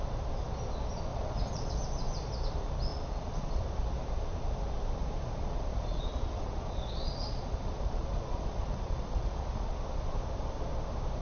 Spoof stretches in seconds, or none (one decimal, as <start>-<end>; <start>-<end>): 1.1-1.7; 2.9-3.6; 5.4-9.7